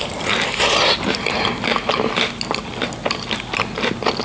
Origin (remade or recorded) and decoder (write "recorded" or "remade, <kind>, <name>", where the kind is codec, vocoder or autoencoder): recorded